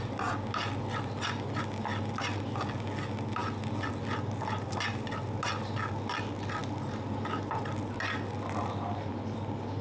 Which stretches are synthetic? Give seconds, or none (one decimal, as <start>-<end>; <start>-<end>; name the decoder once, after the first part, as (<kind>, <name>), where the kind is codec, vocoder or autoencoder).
none